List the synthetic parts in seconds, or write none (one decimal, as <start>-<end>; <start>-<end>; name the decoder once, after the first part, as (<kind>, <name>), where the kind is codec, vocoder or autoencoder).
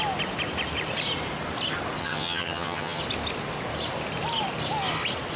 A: 2.0-3.0 (vocoder, HiFi-GAN)